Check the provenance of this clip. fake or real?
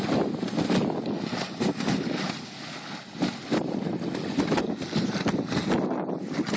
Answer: real